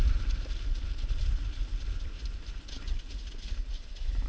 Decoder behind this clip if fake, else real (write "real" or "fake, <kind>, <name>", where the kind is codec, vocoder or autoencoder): real